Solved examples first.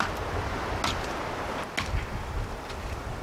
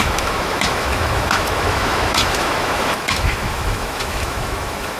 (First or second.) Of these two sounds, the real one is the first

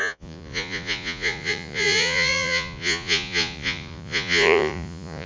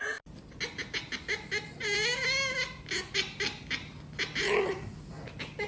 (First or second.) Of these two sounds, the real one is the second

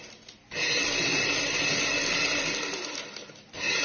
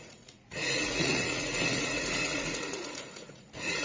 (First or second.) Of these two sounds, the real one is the first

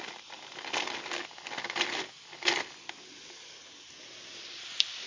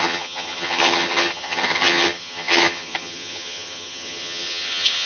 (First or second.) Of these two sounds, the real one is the first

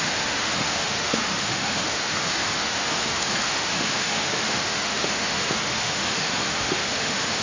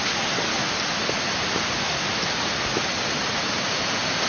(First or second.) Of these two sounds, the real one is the second